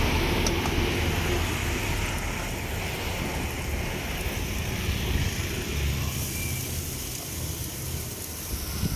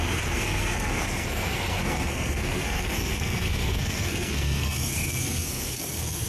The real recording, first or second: first